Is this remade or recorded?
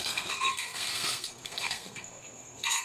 remade